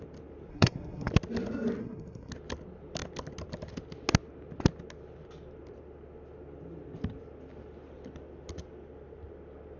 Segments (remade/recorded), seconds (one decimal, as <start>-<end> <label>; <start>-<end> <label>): 0.0-0.5 recorded; 0.5-1.1 remade; 1.1-1.8 recorded; 1.8-2.3 remade; 2.3-9.8 recorded